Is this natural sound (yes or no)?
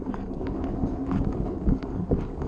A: no